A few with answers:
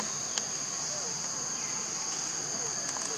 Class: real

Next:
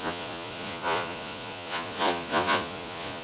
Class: fake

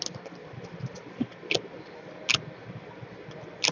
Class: real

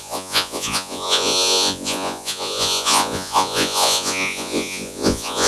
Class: fake